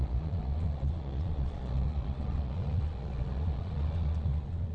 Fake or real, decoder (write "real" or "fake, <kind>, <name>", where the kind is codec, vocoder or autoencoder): fake, vocoder, Vocos